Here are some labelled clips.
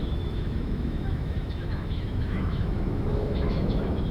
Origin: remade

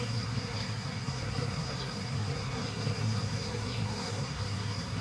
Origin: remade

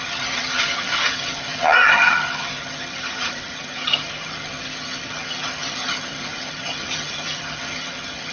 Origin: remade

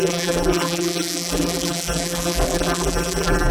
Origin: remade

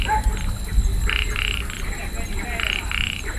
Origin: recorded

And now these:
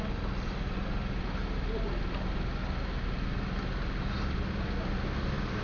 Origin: recorded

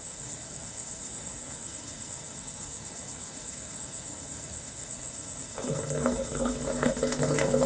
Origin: remade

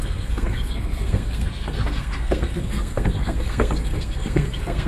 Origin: remade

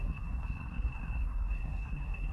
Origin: remade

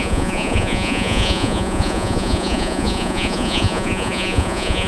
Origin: remade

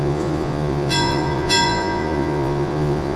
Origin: remade